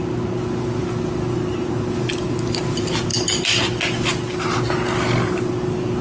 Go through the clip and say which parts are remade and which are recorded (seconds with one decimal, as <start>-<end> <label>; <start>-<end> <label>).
0.0-6.0 recorded